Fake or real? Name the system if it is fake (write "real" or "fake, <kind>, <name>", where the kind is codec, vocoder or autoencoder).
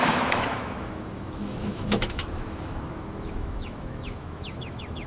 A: fake, autoencoder, DAC-VAE